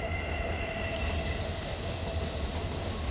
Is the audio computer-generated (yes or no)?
no